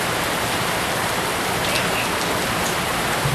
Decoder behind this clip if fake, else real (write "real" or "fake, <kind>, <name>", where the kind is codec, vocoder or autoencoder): real